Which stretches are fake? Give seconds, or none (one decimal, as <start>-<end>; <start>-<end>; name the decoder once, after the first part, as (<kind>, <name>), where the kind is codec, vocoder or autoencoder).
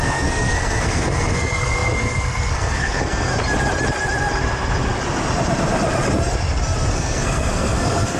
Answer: 0.0-3.3 (codec, SNAC); 6.9-8.2